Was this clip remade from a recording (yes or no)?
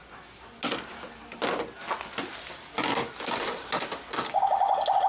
no